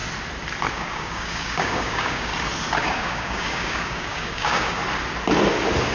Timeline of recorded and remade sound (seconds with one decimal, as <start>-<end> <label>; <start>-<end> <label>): 0.0-0.7 recorded; 0.7-2.3 remade; 2.3-2.8 recorded; 2.8-4.8 remade; 4.8-5.9 recorded